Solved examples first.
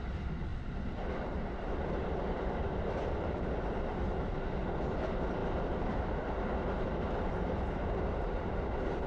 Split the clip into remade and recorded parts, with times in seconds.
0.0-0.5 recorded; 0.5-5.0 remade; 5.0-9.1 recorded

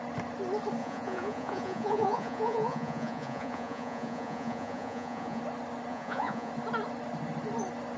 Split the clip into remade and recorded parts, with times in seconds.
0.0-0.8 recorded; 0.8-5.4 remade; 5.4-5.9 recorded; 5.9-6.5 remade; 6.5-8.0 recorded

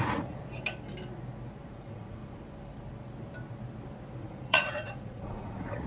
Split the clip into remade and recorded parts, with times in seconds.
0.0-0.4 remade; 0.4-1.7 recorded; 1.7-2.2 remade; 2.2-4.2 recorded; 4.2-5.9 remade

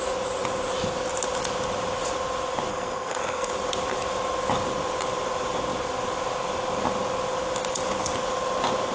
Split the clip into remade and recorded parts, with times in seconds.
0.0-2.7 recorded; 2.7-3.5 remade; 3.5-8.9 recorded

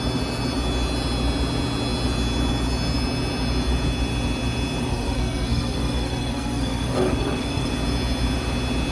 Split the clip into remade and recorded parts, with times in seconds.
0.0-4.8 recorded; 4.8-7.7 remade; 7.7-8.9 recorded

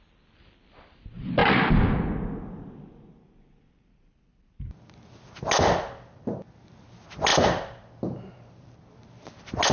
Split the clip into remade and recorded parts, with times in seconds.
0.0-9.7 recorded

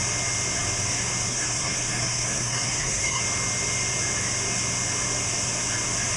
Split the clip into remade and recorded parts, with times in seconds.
0.0-1.3 recorded; 1.3-3.2 remade; 3.2-6.2 recorded

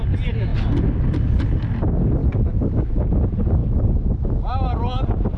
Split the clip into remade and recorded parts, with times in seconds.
0.0-2.2 recorded; 2.2-2.9 remade; 2.9-5.4 recorded